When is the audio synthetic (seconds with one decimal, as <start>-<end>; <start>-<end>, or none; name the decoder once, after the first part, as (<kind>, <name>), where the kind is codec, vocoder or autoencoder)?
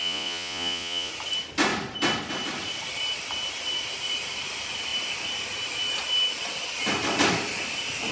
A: 0.0-1.1 (vocoder, Vocos)